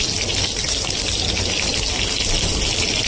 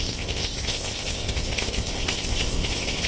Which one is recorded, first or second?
first